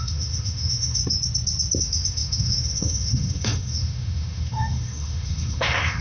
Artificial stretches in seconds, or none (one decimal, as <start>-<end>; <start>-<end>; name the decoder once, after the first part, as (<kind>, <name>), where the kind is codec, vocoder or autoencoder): 0.0-1.0 (autoencoder, DAC-VAE); 1.8-6.0